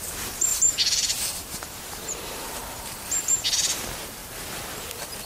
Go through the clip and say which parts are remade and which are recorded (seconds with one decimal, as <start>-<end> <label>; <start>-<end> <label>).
0.0-0.5 recorded; 0.5-2.6 remade; 2.6-5.3 recorded